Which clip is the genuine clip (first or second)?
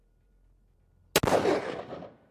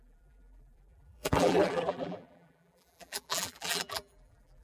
first